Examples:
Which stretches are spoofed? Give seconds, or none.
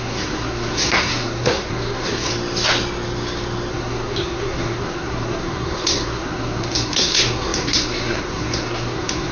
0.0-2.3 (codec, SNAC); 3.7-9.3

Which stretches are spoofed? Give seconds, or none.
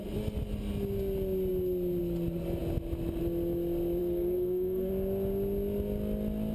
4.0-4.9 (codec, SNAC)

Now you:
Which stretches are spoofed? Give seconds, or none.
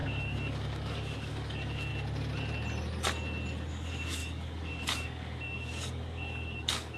0.0-1.9 (codec, DAC); 3.7-7.0